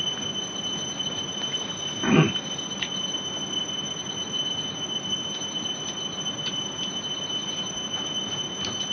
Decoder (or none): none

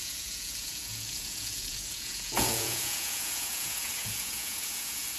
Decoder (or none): vocoder, Vocos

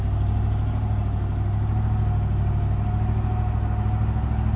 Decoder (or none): none